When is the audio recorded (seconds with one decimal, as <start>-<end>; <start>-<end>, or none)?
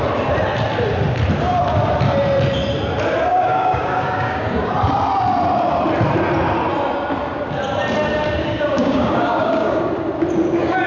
0.0-3.3; 4.7-8.4; 9.8-10.9